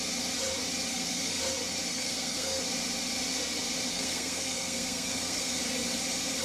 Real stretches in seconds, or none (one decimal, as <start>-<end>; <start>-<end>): 0.0-0.9; 1.4-1.9; 2.6-3.9; 5.6-6.4